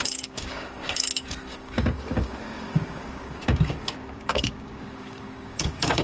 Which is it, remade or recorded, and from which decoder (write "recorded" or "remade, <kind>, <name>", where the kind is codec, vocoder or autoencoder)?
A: remade, codec, DAC